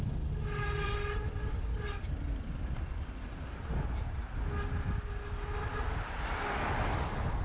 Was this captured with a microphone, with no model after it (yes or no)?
yes